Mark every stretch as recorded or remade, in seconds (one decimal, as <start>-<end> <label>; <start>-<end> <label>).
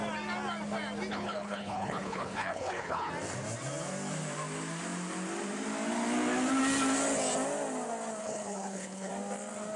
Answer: 0.0-1.1 recorded; 1.1-3.1 remade; 3.1-8.2 recorded; 8.2-9.1 remade; 9.1-9.8 recorded